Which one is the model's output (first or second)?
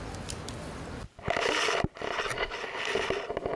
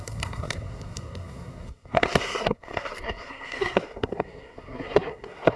second